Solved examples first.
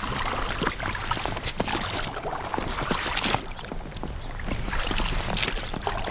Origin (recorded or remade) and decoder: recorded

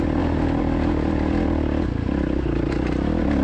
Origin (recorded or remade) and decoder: recorded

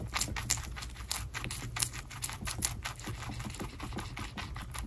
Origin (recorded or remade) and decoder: recorded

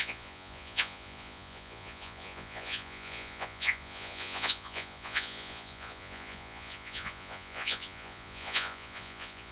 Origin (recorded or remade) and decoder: remade, vocoder, Vocos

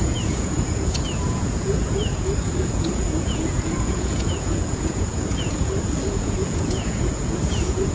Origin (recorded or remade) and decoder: remade, vocoder, Vocos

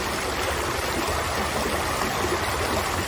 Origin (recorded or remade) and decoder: recorded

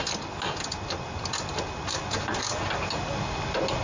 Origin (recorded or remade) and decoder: recorded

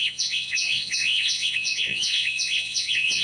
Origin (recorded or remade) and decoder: remade, vocoder, Vocos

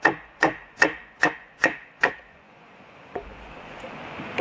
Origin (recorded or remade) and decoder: remade, vocoder, Vocos